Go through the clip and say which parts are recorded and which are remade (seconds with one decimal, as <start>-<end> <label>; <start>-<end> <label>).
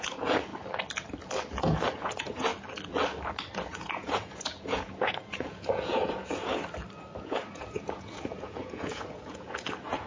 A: 0.0-0.5 remade; 0.5-1.6 recorded; 1.6-2.5 remade; 2.5-3.6 recorded; 3.6-6.6 remade; 6.6-7.2 recorded; 7.2-10.1 remade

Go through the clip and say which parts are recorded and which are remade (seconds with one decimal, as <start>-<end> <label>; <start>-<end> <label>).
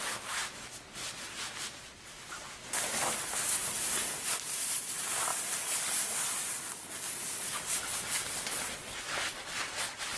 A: 0.0-10.2 recorded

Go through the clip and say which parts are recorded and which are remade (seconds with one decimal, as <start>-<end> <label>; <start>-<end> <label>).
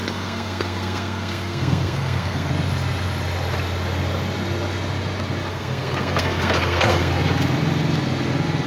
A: 0.0-2.5 remade; 2.5-5.5 recorded; 5.5-7.1 remade; 7.1-8.7 recorded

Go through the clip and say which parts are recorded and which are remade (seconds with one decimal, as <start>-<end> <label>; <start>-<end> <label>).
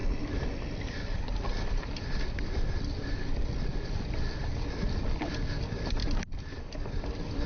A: 0.0-7.5 recorded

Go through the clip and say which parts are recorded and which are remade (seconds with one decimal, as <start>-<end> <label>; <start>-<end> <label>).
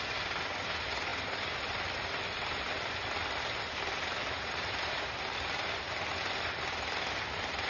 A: 0.0-7.7 recorded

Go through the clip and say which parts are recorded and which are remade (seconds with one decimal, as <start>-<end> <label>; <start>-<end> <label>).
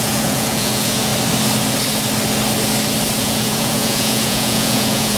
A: 0.0-1.1 remade; 1.1-3.2 recorded; 3.2-5.2 remade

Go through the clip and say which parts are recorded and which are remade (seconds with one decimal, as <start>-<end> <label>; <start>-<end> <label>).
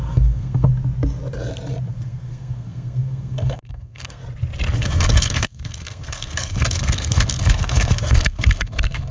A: 0.0-0.7 remade; 0.7-1.9 recorded; 1.9-4.2 remade; 4.2-4.8 recorded; 4.8-9.1 remade